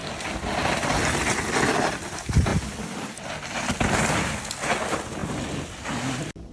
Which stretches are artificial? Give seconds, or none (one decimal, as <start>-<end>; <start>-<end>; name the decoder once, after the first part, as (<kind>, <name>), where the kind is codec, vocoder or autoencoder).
none